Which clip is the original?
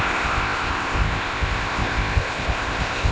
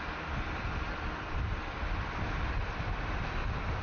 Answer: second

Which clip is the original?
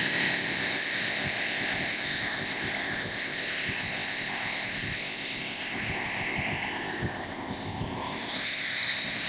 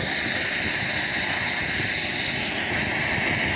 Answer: second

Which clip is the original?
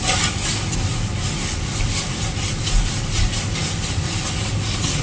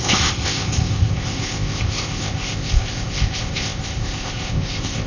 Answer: first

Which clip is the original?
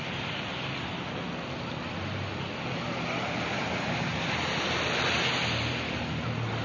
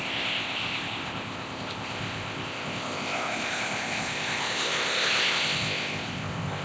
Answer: first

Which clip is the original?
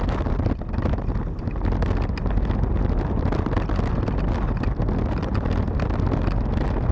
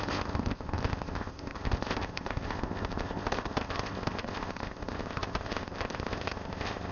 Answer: first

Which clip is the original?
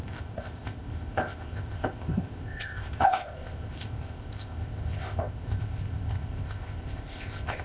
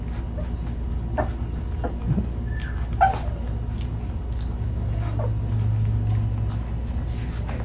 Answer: second